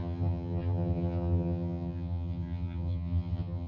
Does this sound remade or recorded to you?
remade